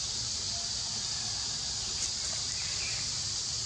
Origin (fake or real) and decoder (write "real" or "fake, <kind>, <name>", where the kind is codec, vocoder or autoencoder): real